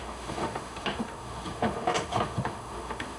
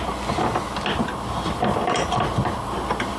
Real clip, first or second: second